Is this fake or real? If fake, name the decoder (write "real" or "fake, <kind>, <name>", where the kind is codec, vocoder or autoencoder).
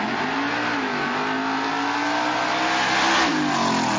real